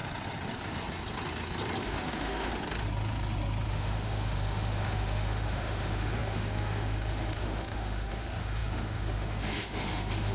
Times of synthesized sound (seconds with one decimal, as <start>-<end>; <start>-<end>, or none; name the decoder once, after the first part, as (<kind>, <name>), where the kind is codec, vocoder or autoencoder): 1.8-2.5 (autoencoder, DAC-VAE); 3.7-10.3